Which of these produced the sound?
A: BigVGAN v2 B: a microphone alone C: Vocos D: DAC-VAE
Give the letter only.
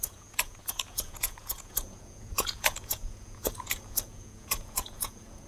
C